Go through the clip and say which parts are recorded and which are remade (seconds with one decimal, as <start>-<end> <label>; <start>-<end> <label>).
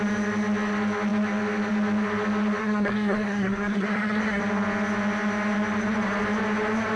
0.0-2.6 recorded; 2.6-4.4 remade; 4.4-7.0 recorded